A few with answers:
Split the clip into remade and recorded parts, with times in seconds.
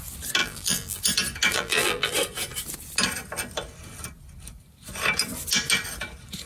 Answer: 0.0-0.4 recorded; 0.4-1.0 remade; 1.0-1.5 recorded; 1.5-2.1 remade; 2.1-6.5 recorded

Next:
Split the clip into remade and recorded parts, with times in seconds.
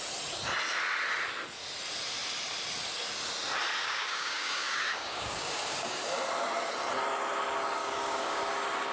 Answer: 0.0-3.8 recorded; 3.8-6.0 remade; 6.0-7.8 recorded; 7.8-8.4 remade; 8.4-8.9 recorded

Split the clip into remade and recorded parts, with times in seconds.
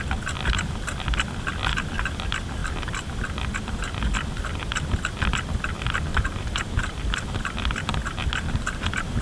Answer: 0.0-6.1 recorded; 6.1-6.8 remade; 6.8-9.2 recorded